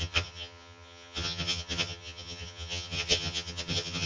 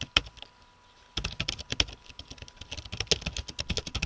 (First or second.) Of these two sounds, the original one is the second